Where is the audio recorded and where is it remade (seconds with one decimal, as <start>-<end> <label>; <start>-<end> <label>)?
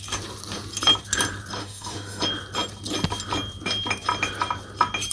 0.0-1.6 recorded; 1.6-2.2 remade; 2.2-5.1 recorded